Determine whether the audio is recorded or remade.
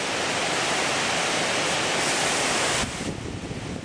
recorded